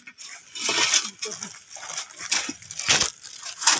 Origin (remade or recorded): recorded